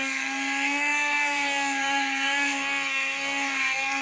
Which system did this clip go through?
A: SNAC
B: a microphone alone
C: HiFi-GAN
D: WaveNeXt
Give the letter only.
A